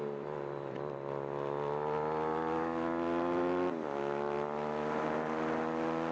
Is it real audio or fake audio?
real